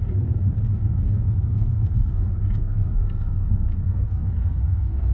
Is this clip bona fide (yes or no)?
no